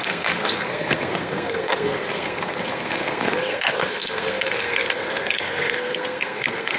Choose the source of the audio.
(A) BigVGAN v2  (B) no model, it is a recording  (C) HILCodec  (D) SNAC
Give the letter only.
D